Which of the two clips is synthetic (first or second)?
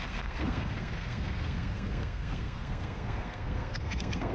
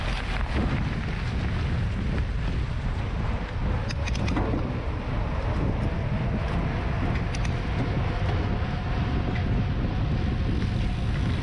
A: first